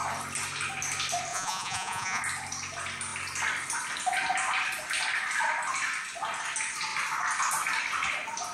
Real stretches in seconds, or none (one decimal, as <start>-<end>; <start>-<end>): 0.0-1.3; 2.2-8.5